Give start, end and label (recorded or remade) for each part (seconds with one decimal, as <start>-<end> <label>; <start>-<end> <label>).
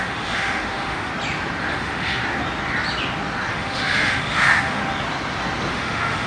0.0-1.1 remade; 1.1-1.7 recorded; 1.7-2.2 remade; 2.2-3.5 recorded; 3.5-4.8 remade; 4.8-5.7 recorded; 5.7-6.3 remade